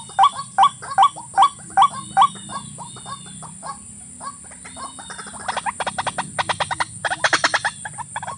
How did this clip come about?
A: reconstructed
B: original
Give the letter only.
B